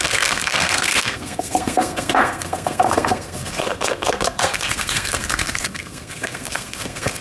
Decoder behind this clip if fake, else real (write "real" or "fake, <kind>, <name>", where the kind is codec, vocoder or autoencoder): fake, codec, SNAC